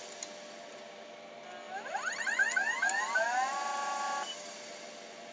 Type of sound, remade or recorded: recorded